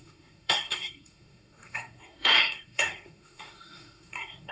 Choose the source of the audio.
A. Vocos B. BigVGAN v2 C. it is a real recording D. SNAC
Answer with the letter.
D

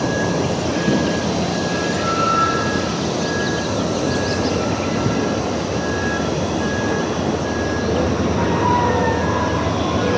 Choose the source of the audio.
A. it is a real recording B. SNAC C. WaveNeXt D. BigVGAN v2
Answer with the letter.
A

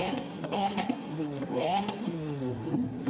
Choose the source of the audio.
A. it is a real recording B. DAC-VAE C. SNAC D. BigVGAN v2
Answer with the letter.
C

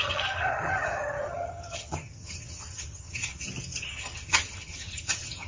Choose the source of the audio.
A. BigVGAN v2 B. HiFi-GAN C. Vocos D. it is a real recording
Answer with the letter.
B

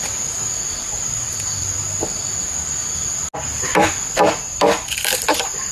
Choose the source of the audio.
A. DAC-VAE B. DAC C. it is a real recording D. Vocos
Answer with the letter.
C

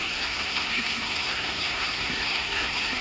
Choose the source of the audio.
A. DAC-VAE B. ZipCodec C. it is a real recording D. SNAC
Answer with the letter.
D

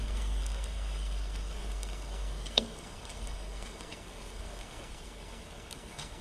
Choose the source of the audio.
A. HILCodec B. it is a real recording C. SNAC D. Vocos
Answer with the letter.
C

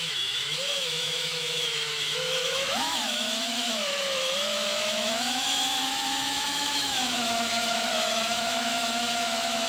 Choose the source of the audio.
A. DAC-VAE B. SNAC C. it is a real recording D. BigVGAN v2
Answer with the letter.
A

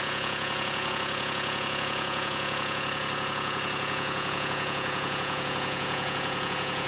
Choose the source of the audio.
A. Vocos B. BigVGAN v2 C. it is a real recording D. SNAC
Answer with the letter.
A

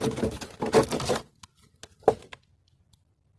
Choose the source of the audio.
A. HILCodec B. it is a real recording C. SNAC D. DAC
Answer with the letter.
B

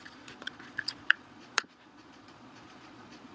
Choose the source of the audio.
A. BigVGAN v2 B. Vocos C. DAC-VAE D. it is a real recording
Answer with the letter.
B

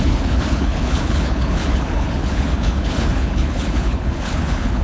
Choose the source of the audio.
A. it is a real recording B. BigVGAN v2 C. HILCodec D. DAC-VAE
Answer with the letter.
C